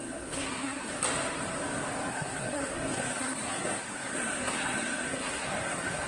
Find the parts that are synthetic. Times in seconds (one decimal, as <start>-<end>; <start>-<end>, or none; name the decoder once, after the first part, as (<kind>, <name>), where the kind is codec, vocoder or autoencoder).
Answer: 0.0-0.9 (codec, SNAC); 2.1-6.1